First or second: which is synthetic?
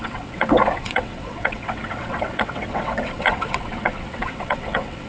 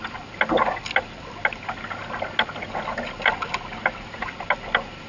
first